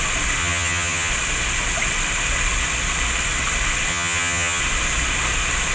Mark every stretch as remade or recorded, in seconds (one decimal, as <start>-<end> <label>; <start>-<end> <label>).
0.0-0.4 recorded; 0.4-1.1 remade; 1.1-3.9 recorded; 3.9-4.6 remade; 4.6-5.7 recorded